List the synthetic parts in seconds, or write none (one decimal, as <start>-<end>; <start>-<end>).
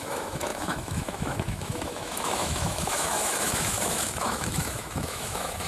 0.0-5.7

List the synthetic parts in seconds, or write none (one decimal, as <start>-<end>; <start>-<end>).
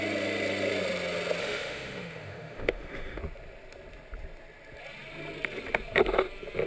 1.4-3.2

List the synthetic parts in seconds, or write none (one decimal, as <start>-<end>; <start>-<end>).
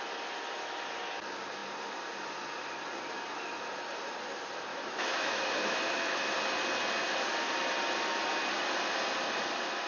4.7-6.2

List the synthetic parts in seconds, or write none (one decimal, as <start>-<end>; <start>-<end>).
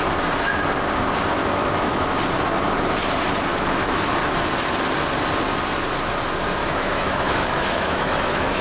1.4-2.2; 3.5-4.1; 6.6-8.6